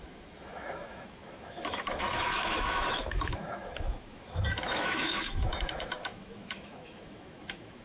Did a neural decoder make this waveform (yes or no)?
yes